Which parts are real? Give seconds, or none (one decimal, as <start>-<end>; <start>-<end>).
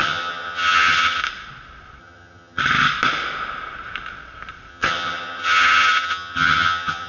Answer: 1.2-2.0; 2.6-4.7